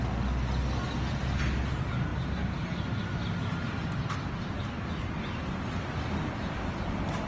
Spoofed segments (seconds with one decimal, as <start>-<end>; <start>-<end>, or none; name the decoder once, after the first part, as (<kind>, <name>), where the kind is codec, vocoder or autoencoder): none